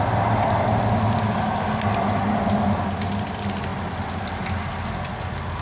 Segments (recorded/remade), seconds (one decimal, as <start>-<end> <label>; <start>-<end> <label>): 0.0-5.6 recorded